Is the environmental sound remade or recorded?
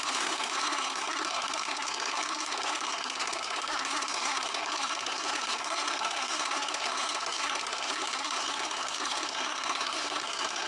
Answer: remade